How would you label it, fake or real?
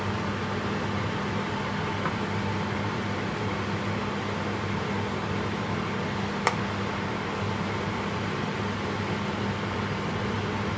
real